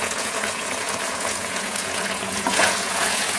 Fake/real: fake